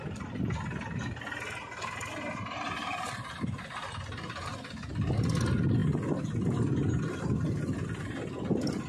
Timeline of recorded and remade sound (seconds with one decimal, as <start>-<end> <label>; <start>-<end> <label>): 0.0-8.9 recorded